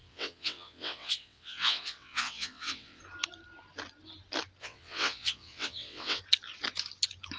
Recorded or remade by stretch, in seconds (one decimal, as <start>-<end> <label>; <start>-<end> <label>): 0.0-3.0 remade; 3.0-4.6 recorded; 4.6-6.2 remade; 6.2-7.4 recorded